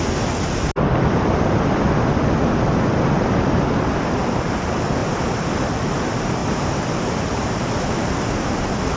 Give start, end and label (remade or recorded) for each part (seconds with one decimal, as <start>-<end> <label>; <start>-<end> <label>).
0.0-6.4 recorded; 6.4-7.7 remade; 7.7-9.0 recorded